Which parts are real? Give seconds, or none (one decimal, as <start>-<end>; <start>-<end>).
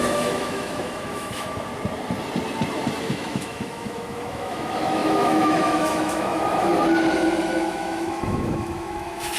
1.7-3.0; 6.7-7.4